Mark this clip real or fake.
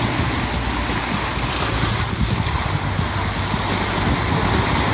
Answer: real